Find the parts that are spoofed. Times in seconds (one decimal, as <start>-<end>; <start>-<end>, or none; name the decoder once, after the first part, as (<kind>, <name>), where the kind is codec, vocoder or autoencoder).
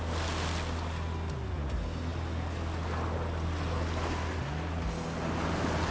none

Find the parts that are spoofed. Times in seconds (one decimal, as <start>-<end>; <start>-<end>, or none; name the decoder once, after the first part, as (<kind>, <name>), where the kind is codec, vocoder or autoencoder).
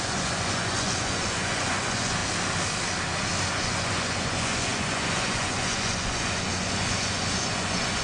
0.0-2.2 (vocoder, Vocos); 3.5-8.0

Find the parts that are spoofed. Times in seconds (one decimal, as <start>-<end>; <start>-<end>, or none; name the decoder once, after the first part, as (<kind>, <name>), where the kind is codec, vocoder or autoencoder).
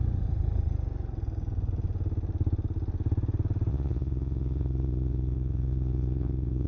3.7-6.7 (vocoder, Vocos)